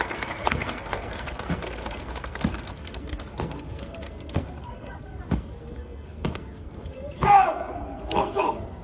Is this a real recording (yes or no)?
no